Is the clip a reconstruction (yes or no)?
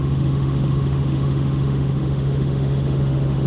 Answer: yes